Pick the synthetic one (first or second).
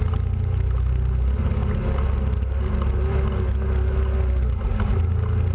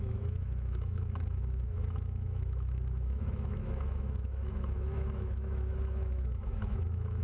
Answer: second